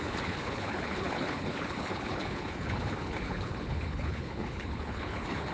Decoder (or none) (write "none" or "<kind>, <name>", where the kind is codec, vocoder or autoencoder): codec, HILCodec